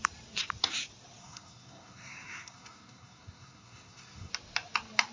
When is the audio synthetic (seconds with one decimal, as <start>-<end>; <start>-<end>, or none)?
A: 1.2-4.3